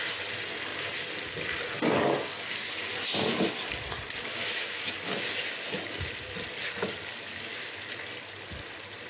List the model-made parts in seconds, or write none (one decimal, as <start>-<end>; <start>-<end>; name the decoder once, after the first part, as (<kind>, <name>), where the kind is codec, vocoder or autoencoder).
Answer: 4.3-4.9 (autoencoder, DAC-VAE)